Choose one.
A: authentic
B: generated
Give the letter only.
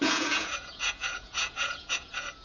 B